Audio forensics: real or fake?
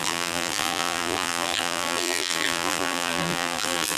fake